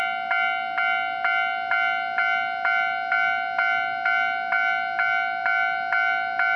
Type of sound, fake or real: real